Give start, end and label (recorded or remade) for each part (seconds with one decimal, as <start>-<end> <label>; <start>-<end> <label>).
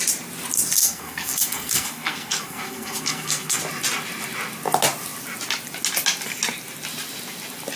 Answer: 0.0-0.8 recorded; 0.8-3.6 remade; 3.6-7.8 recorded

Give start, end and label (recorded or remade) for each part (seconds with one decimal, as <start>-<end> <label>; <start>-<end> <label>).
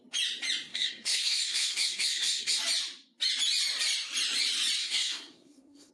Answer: 0.0-0.7 recorded; 0.7-2.6 remade; 2.6-4.8 recorded; 4.8-5.9 remade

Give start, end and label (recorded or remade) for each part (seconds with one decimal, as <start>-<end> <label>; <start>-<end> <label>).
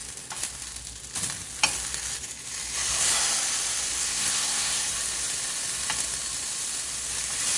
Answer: 0.0-4.0 recorded; 4.0-4.9 remade; 4.9-7.6 recorded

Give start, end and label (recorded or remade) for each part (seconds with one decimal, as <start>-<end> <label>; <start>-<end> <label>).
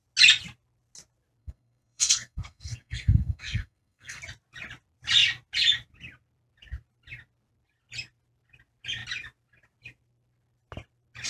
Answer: 0.0-1.4 recorded; 1.4-4.2 remade; 4.2-11.3 recorded